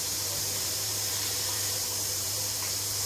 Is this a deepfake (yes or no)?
yes